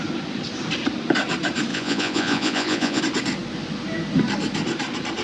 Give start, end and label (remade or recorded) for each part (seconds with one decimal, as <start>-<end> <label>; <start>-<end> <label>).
0.0-1.7 recorded; 1.7-3.0 remade; 3.0-5.2 recorded